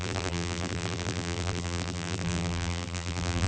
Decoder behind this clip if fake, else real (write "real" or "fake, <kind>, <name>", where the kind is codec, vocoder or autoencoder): fake, vocoder, BigVGAN v2